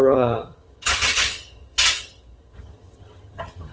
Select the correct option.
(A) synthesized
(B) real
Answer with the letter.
A